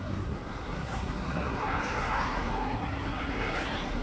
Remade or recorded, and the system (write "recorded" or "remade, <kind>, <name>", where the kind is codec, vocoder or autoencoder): remade, codec, SNAC